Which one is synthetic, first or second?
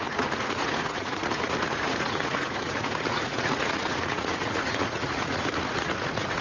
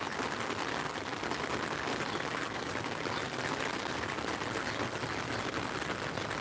first